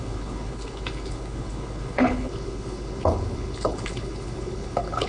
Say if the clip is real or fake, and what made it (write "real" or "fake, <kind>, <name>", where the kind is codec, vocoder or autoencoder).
fake, codec, HILCodec